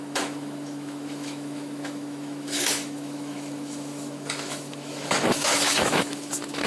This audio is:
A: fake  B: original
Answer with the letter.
A